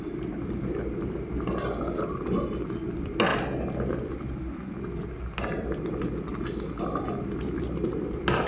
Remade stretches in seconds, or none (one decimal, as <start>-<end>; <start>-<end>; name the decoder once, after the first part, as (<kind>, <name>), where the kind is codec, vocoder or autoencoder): none